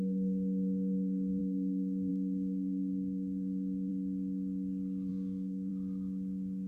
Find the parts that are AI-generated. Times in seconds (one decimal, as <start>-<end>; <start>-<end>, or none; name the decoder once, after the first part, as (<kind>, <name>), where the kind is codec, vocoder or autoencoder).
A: 0.0-3.9 (codec, SNAC); 5.1-5.7